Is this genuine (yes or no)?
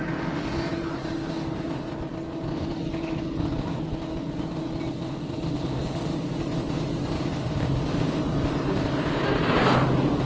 yes